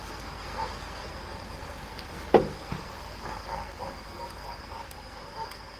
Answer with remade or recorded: remade